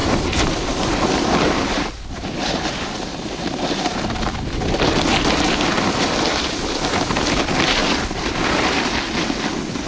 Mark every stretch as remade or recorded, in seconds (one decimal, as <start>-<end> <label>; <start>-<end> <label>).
0.0-3.3 remade; 3.3-7.8 recorded; 7.8-8.8 remade; 8.8-9.9 recorded

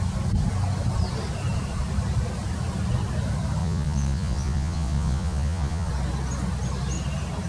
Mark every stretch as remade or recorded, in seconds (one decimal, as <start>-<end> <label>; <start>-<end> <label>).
0.0-3.6 recorded; 3.6-5.9 remade; 5.9-7.5 recorded

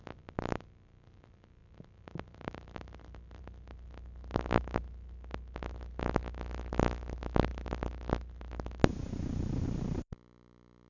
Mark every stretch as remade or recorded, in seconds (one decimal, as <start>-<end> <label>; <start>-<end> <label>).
0.0-10.9 recorded